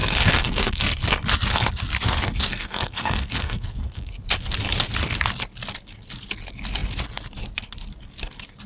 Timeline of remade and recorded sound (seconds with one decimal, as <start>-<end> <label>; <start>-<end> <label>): 0.0-0.8 remade; 0.8-2.5 recorded; 2.5-4.1 remade; 4.1-8.7 recorded